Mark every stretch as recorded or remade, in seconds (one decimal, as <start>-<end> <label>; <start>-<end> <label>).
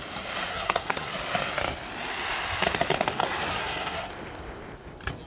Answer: 0.0-0.5 recorded; 0.5-1.1 remade; 1.1-3.5 recorded; 3.5-4.1 remade; 4.1-5.3 recorded